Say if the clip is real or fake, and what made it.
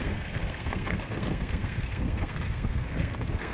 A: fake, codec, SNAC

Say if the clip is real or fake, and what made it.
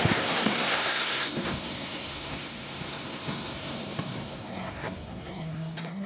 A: fake, codec, SNAC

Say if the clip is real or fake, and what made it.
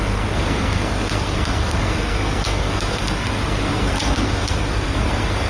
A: fake, codec, SNAC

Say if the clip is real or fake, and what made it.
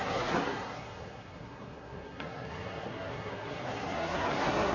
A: fake, codec, SNAC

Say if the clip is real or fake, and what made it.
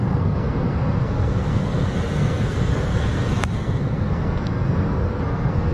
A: fake, codec, SNAC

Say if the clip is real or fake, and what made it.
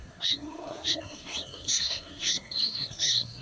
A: fake, codec, SNAC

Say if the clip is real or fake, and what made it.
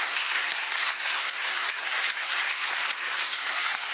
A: fake, codec, SNAC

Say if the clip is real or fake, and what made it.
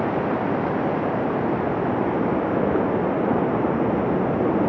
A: real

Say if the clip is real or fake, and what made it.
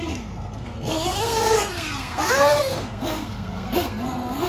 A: fake, codec, SNAC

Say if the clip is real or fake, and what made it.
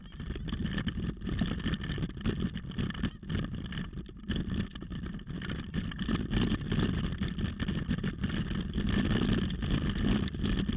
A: real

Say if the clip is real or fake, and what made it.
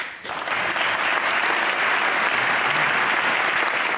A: real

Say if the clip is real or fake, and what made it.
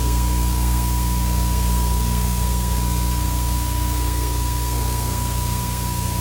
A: fake, codec, SNAC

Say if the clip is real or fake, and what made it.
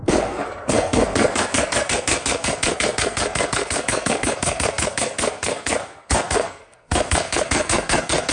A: fake, codec, SNAC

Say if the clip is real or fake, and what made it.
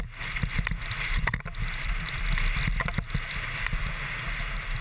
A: real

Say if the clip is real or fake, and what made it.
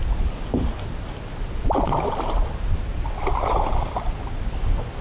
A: real